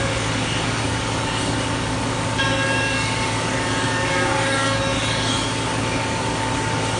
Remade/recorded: remade